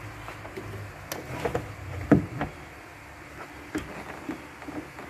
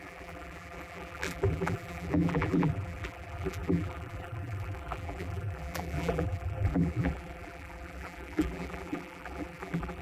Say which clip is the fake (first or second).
second